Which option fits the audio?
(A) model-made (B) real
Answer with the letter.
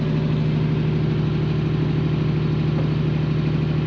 B